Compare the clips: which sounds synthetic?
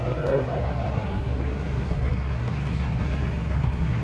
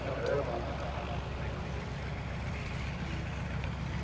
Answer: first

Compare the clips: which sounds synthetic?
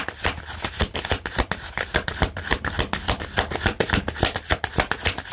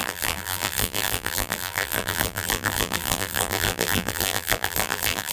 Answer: second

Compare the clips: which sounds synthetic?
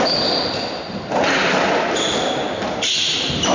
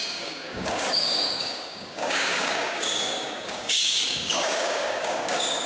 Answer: second